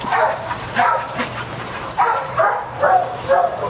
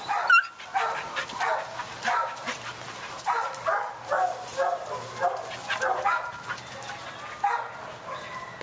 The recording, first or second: second